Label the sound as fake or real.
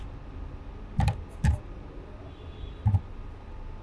real